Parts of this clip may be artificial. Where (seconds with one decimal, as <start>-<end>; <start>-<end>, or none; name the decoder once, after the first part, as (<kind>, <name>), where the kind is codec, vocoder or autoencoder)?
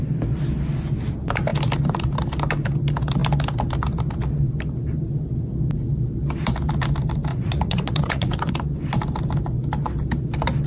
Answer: 7.3-8.5 (vocoder, Vocos)